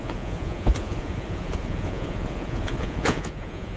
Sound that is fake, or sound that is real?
fake